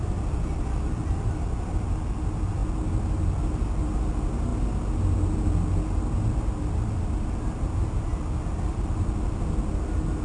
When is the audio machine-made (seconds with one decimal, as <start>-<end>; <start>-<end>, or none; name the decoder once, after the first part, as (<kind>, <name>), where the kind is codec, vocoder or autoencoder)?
none